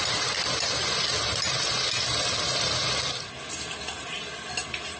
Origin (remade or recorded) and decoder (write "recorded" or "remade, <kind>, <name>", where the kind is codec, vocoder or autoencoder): recorded